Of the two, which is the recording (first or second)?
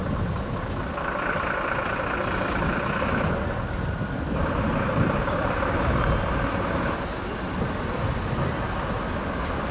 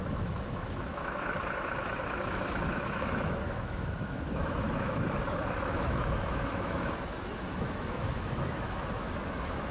first